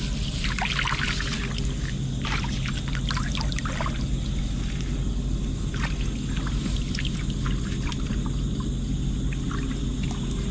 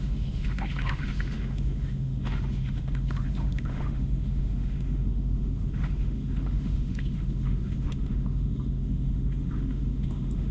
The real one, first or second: first